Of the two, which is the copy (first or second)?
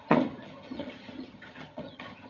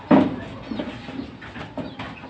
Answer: first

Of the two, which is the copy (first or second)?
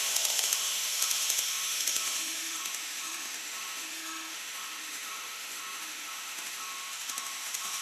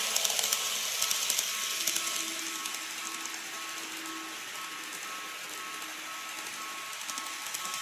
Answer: first